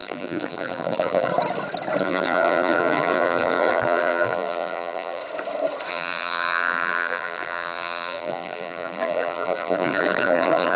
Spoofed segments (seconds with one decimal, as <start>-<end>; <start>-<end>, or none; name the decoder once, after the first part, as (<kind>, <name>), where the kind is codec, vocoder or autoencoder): 0.0-1.3 (vocoder, BigVGAN v2); 2.0-5.2; 5.9-10.8